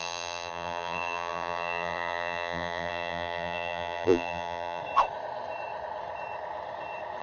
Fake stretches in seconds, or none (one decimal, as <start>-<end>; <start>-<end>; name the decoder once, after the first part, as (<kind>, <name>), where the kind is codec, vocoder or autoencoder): 0.0-4.8 (vocoder, BigVGAN v2)